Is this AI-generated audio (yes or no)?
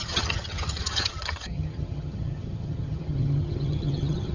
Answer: yes